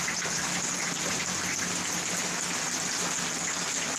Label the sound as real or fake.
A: real